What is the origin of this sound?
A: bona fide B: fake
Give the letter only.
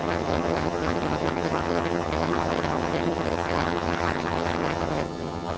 B